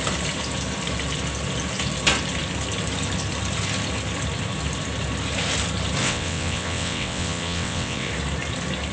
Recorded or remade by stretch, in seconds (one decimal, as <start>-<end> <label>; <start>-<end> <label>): 0.0-6.0 recorded; 6.0-8.1 remade; 8.1-8.9 recorded